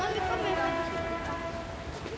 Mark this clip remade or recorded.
recorded